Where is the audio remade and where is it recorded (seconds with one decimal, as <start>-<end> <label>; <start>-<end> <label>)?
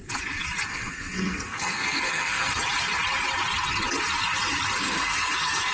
0.0-0.7 recorded; 0.7-2.6 remade; 2.6-4.8 recorded; 4.8-5.7 remade